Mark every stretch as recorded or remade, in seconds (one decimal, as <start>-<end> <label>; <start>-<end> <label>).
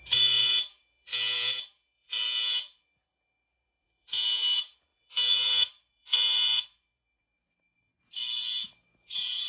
0.0-7.9 remade; 7.9-8.7 recorded; 8.7-9.5 remade